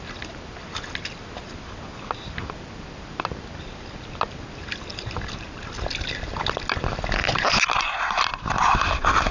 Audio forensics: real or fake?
real